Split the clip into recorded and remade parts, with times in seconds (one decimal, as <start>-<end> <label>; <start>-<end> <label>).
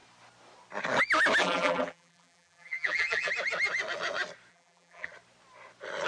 0.0-1.4 recorded; 1.4-3.3 remade; 3.3-4.5 recorded; 4.5-5.1 remade; 5.1-6.1 recorded